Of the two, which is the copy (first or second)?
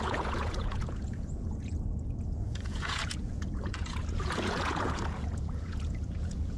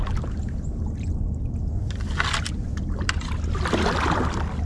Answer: first